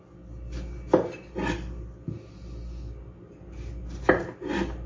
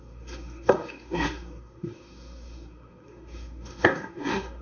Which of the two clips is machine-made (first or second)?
second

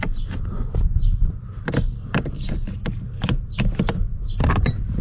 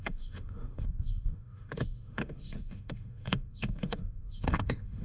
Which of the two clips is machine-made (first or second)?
second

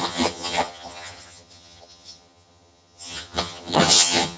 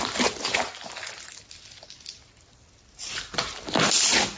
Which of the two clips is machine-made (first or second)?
first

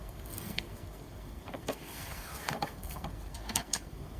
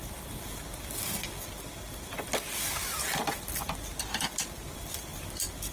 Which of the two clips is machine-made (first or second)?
first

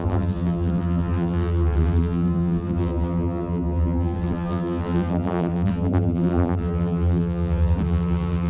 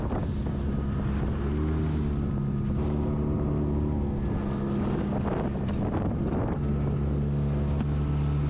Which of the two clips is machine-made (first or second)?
first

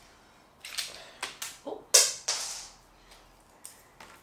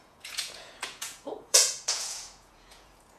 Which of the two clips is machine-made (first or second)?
second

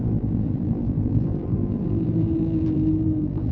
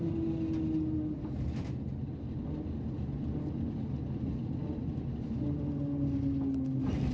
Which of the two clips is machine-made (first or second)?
first